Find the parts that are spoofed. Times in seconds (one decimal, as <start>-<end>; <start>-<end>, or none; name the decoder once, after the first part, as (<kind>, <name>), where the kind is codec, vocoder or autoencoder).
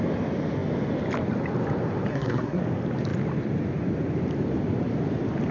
2.1-2.6 (codec, SNAC)